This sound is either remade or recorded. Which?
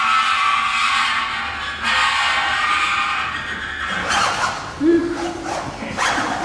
recorded